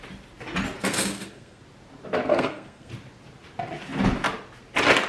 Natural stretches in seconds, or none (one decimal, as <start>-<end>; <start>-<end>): 0.0-0.8; 1.6-2.3; 2.9-5.1